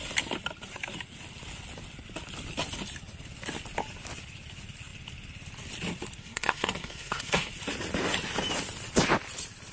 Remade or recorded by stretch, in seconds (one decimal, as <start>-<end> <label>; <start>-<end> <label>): 0.0-6.2 recorded; 6.2-7.5 remade; 7.5-9.7 recorded